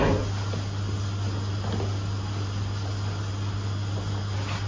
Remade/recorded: recorded